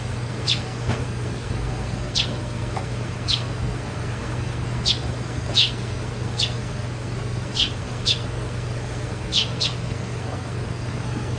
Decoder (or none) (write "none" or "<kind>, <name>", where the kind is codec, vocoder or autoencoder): codec, SNAC